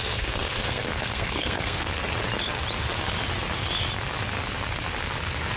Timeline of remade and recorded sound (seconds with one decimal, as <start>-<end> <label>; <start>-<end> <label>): 0.0-2.0 remade; 2.0-5.6 recorded